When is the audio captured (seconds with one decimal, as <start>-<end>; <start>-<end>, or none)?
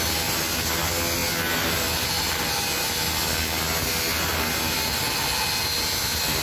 0.0-6.4